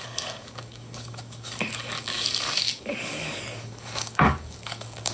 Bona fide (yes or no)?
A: no